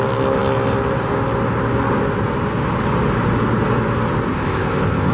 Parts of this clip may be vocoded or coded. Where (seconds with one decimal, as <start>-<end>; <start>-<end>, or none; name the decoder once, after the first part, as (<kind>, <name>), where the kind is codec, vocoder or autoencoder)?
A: 4.3-5.1 (codec, ZipCodec)